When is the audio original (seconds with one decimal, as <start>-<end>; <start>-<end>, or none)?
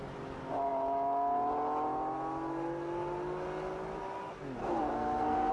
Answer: 0.0-4.6